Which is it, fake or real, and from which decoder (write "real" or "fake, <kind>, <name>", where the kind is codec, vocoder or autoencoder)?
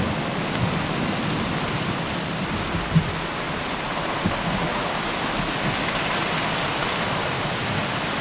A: real